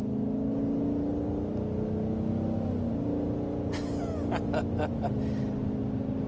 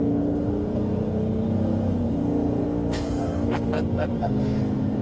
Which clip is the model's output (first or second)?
second